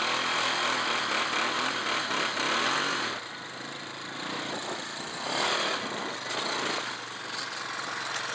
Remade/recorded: recorded